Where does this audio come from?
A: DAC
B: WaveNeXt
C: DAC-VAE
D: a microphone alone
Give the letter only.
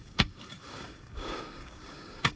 A